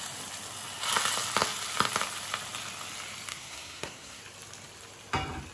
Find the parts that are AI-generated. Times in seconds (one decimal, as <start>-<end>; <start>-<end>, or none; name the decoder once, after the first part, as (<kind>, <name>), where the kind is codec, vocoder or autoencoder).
3.3-4.2 (codec, SNAC)